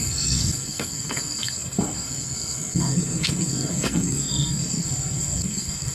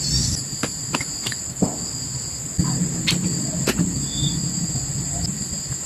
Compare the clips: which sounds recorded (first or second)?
second